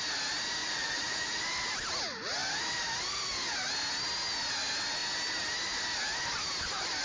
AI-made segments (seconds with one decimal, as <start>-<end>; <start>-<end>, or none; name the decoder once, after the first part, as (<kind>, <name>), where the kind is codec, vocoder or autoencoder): 0.6-1.4 (vocoder, Vocos)